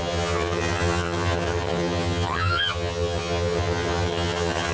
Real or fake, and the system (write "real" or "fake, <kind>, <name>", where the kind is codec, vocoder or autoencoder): fake, vocoder, HiFi-GAN